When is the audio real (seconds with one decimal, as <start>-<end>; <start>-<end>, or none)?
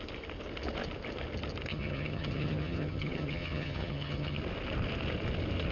0.0-1.7; 4.4-5.7